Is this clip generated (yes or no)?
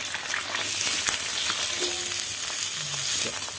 no